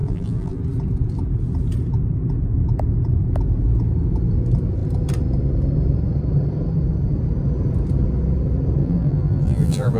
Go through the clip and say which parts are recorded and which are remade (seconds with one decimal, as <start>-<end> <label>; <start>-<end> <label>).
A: 0.0-0.6 remade; 0.6-8.8 recorded; 8.8-10.0 remade